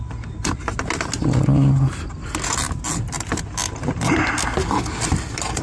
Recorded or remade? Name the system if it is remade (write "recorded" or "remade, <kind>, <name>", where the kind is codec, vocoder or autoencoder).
recorded